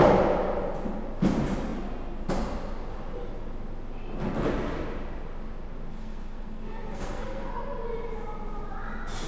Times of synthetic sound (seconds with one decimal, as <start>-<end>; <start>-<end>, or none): 5.9-7.5